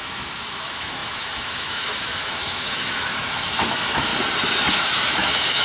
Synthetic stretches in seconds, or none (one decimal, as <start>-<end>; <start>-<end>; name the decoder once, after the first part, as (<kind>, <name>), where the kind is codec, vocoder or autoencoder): 0.0-4.1 (autoencoder, DAC-VAE); 4.7-5.6